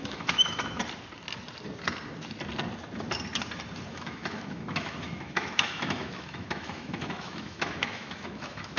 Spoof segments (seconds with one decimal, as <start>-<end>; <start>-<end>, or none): 0.0-0.8; 3.9-8.8